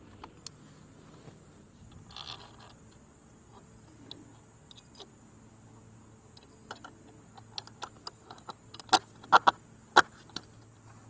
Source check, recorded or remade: recorded